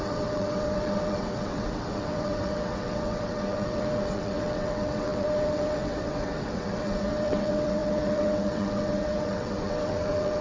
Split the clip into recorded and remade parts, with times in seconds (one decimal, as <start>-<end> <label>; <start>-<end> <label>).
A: 0.0-10.4 remade